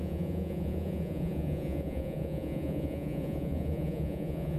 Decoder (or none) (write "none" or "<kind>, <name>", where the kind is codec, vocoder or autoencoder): vocoder, Vocos